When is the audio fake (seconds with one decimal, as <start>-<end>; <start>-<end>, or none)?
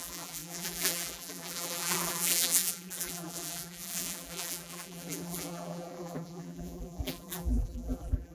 0.0-8.3